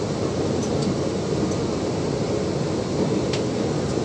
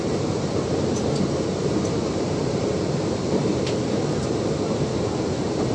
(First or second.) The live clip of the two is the first